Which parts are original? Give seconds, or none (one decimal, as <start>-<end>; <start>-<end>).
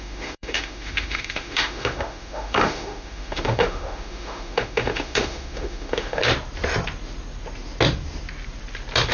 6.2-9.1